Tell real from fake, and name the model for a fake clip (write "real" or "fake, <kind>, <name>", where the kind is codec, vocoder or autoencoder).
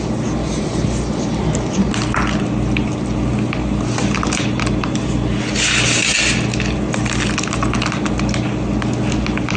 real